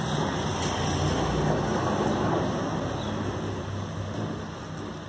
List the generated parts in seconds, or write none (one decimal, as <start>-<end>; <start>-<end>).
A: none